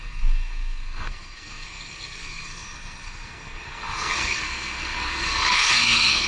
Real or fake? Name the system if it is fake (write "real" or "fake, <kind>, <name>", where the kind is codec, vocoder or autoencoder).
fake, codec, SNAC